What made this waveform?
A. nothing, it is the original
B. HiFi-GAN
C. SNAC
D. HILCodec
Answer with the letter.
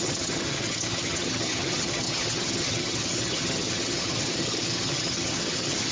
B